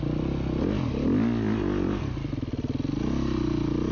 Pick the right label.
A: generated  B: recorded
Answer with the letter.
B